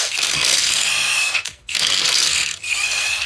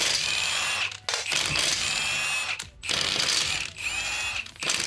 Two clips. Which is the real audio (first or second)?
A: second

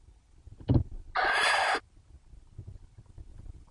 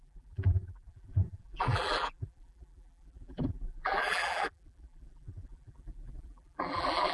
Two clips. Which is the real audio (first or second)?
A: first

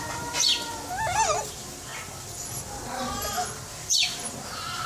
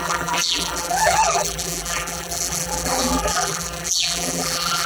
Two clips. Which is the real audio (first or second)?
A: first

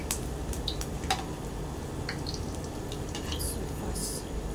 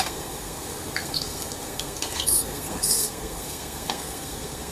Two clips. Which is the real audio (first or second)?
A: first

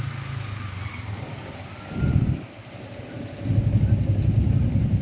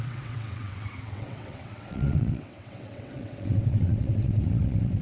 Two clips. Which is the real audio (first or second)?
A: first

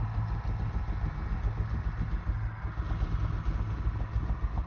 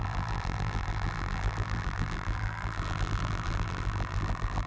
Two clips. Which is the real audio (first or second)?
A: first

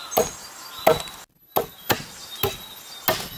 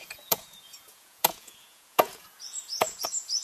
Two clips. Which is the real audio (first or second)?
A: first